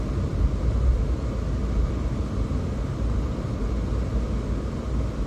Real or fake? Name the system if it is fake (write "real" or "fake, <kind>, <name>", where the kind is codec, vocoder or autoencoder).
real